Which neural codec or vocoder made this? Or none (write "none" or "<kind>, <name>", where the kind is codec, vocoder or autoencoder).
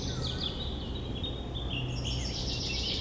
none